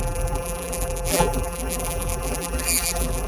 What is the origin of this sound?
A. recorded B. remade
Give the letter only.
B